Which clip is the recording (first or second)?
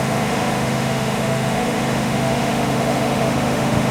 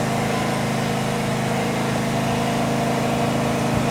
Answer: second